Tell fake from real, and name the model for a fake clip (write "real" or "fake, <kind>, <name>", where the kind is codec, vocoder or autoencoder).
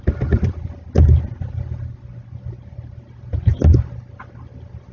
real